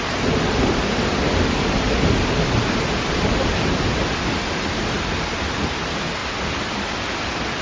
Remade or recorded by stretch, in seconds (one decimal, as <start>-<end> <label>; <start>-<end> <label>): 0.0-7.6 recorded